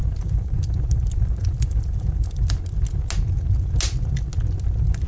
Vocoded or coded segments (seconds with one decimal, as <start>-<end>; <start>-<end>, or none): 0.0-0.7; 1.4-2.6